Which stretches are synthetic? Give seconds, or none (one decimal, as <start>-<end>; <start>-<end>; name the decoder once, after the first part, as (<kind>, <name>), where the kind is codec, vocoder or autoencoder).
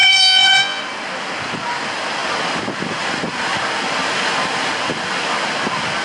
0.0-0.8 (vocoder, Vocos)